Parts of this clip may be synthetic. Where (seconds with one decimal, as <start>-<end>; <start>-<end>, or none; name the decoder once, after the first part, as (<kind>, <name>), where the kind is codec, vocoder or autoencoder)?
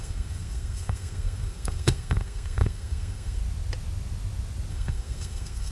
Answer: 0.0-3.4 (codec, SNAC); 4.7-5.7